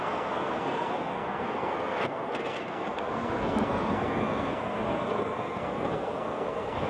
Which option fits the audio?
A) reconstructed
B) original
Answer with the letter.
A